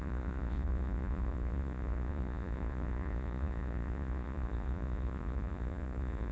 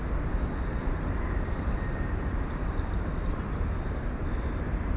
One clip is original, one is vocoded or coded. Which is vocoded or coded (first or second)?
first